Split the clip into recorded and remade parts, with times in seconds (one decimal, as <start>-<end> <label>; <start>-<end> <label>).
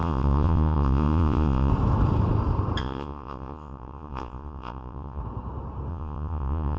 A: 0.0-1.7 remade; 1.7-2.8 recorded; 2.8-5.2 remade; 5.2-5.9 recorded; 5.9-6.8 remade